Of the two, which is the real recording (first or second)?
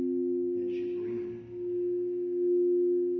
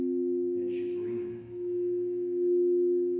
first